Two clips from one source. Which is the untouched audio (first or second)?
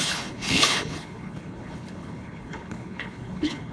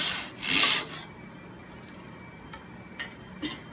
second